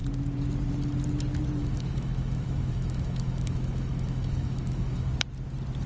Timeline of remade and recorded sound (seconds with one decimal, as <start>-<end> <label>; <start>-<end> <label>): 0.0-1.6 recorded; 1.6-5.1 remade; 5.1-5.9 recorded